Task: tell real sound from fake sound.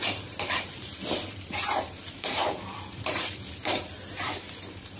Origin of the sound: fake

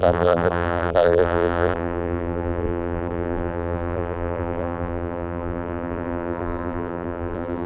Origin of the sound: fake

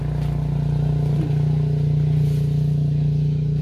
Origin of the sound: real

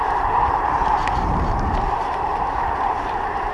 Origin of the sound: fake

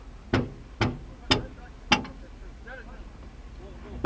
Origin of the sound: real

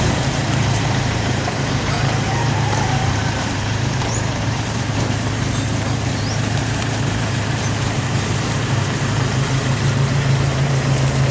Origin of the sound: fake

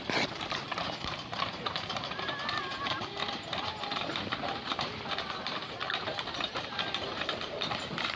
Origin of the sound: fake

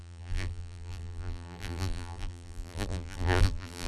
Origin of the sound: fake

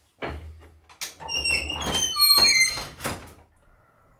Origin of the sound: real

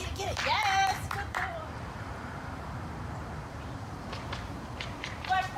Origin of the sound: fake